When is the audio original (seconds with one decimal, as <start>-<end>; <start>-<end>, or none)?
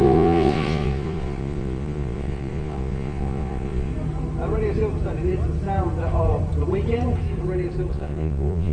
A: 3.9-7.9